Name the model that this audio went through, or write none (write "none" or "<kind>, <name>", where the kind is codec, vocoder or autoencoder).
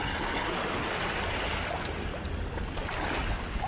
none